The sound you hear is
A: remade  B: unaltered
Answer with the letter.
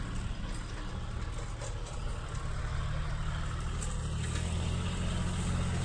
B